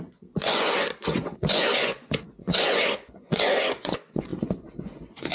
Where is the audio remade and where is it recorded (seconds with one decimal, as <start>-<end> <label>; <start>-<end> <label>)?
0.0-5.3 remade